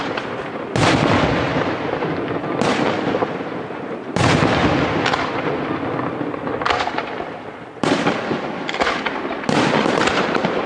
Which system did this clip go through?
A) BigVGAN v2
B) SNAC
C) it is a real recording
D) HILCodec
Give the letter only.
C